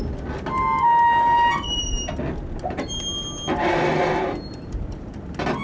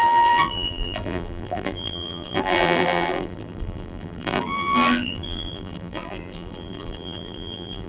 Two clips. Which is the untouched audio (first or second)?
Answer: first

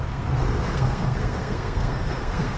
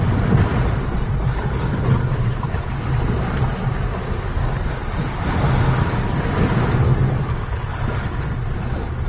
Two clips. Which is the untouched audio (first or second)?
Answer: second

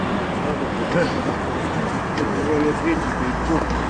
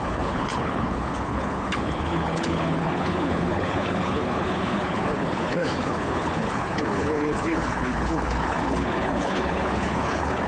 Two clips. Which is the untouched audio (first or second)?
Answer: first